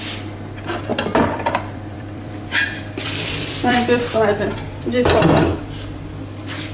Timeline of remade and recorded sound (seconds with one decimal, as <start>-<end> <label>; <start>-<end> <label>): 0.0-0.9 recorded; 0.9-4.9 remade; 4.9-5.5 recorded; 5.5-6.1 remade; 6.1-6.7 recorded

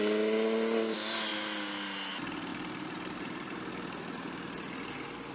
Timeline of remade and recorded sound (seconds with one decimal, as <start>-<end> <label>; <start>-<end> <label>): 0.0-2.5 recorded; 2.5-3.7 remade; 3.7-5.3 recorded

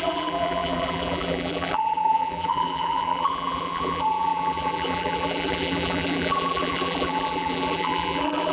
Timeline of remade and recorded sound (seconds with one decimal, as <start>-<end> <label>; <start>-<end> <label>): 0.0-8.5 remade

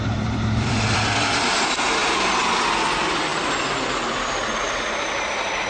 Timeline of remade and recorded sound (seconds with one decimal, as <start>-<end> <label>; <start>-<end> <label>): 0.0-5.7 remade

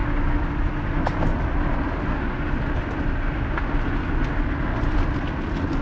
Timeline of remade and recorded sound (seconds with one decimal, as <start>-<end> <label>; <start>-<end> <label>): 0.0-5.8 recorded